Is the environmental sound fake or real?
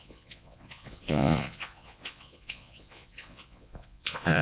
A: fake